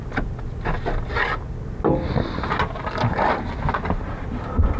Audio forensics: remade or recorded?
recorded